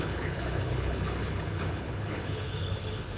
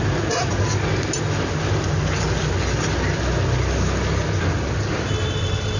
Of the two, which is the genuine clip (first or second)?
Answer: second